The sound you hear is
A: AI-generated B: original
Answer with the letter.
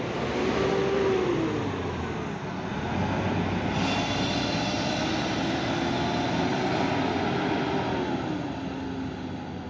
B